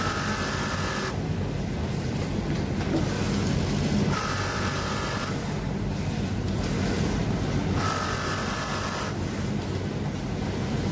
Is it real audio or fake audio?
real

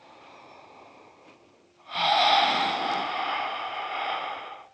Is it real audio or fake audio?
real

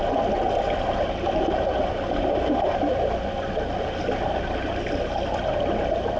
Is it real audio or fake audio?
real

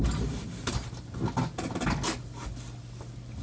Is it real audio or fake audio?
real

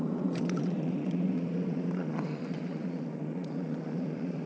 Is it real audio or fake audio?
fake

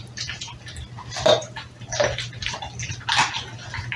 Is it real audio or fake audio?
real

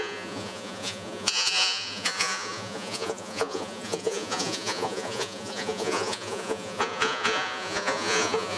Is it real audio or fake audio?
fake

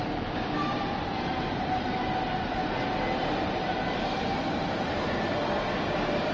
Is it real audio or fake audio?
real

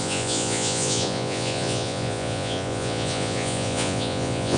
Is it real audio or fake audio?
fake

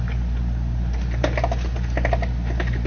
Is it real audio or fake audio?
real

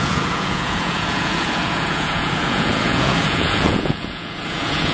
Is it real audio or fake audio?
fake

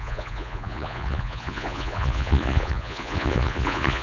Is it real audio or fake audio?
fake